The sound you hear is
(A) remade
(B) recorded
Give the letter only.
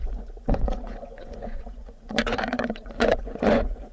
A